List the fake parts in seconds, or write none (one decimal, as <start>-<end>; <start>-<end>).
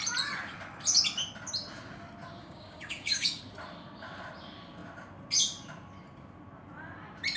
2.4-3.4